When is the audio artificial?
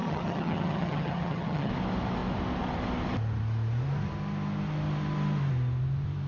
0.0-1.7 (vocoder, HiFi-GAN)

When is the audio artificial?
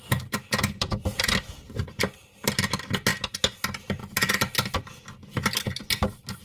0.0-3.1 (vocoder, BigVGAN v2); 3.6-6.4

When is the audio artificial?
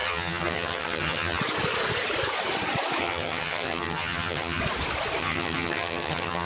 0.0-1.4 (vocoder, HiFi-GAN); 3.0-4.6; 5.2-6.5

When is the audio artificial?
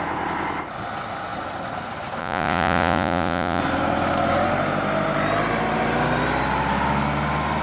2.2-3.6 (vocoder, Vocos)